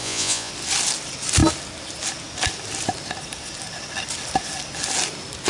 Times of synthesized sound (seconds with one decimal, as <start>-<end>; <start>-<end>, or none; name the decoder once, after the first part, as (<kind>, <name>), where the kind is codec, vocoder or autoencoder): 0.0-0.5 (vocoder, Vocos)